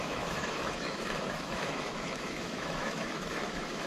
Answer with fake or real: fake